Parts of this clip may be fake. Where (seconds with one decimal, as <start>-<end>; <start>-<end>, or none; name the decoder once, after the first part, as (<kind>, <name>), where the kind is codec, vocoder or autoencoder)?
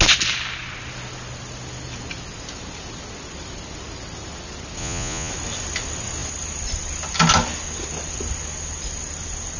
4.8-5.3 (vocoder, Vocos)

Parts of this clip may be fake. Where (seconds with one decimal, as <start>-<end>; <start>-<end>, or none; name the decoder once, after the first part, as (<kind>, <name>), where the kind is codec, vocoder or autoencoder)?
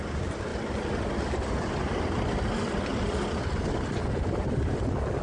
none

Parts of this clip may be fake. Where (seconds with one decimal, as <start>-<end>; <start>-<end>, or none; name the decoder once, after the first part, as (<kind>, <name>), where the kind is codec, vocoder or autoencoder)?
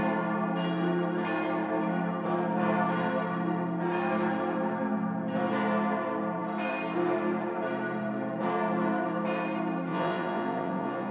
9.9-11.1 (vocoder, Vocos)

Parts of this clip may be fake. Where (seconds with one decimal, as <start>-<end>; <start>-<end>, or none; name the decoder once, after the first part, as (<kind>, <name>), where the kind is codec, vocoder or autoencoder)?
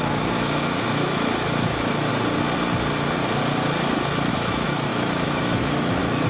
0.0-2.1 (autoencoder, DAC-VAE); 4.3-6.3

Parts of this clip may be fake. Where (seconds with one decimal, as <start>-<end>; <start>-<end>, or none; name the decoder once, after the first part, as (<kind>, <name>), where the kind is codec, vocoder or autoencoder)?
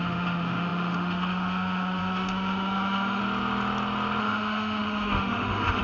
0.0-3.2 (autoencoder, DAC-VAE); 4.2-5.8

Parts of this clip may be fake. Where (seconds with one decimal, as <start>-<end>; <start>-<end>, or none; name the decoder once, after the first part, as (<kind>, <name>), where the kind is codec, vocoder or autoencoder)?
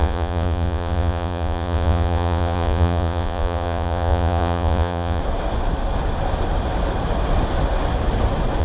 0.0-5.2 (vocoder, Vocos)